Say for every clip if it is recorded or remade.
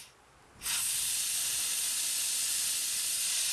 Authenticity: recorded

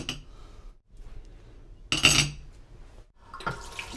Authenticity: recorded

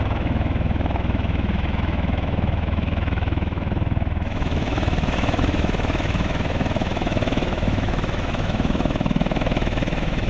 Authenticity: remade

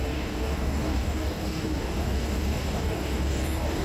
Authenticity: remade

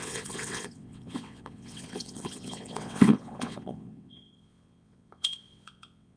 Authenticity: remade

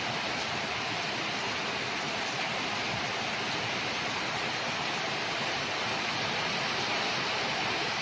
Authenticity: remade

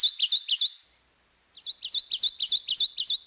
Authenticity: recorded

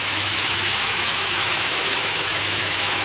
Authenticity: remade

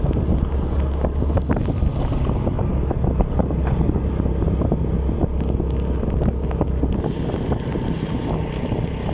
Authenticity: recorded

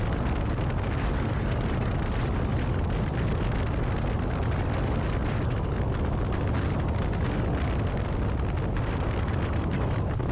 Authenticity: recorded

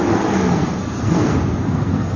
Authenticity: remade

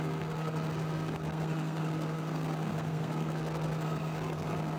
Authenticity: remade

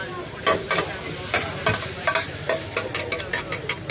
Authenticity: recorded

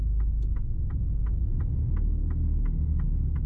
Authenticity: recorded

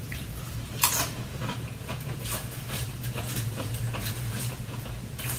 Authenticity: remade